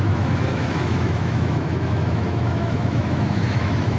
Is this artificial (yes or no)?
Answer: yes